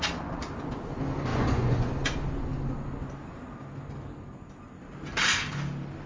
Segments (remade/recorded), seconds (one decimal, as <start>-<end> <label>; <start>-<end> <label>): 0.0-1.3 recorded; 1.3-1.9 remade; 1.9-6.1 recorded